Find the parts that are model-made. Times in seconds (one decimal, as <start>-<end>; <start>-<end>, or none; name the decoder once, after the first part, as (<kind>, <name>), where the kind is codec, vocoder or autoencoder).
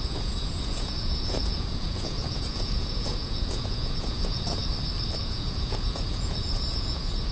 0.0-4.6 (vocoder, Vocos); 5.2-7.3